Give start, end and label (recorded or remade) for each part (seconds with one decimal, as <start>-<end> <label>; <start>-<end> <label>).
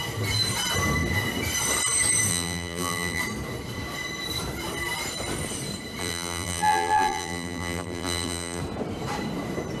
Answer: 0.0-2.3 recorded; 2.3-3.2 remade; 3.2-6.0 recorded; 6.0-8.6 remade; 8.6-9.8 recorded